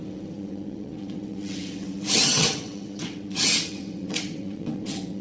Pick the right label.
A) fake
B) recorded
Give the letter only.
A